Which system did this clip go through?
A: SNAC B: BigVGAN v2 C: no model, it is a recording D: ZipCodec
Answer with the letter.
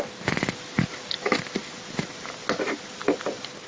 C